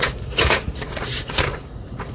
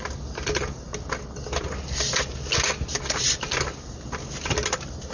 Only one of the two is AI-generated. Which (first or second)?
first